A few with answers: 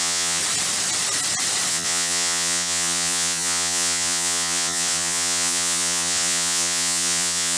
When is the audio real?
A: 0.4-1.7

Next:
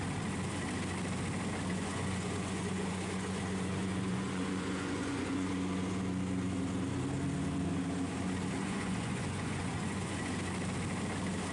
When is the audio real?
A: 0.0-1.7; 5.5-8.6; 10.3-11.5

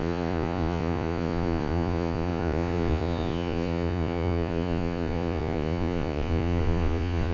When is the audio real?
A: none

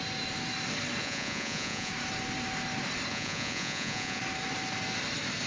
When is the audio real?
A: 0.0-1.0; 1.9-3.1; 4.2-5.5

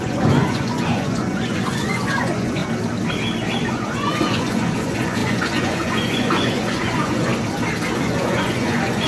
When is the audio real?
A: 2.6-3.6; 7.3-7.9